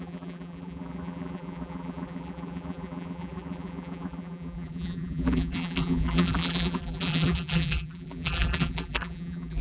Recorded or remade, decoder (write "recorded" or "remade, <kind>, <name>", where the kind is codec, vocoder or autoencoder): remade, vocoder, BigVGAN v2